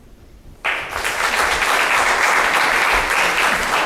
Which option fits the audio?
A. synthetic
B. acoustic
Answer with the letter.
A